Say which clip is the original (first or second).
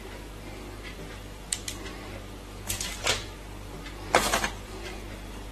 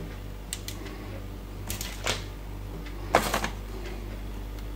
second